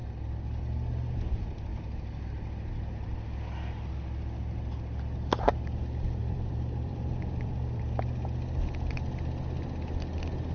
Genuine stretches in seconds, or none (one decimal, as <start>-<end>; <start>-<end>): 0.0-6.2; 7.8-10.5